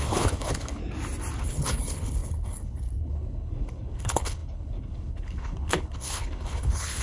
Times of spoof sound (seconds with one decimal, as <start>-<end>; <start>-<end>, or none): 0.0-0.8; 1.4-7.0

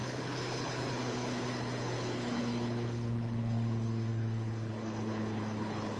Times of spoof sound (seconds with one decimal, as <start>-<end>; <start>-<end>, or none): 0.0-6.0

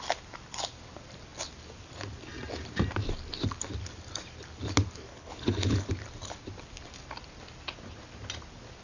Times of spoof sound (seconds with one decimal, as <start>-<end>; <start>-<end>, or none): 5.1-5.9

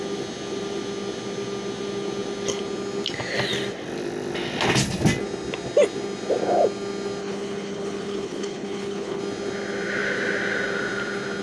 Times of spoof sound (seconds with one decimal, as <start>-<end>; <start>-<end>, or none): 7.2-9.2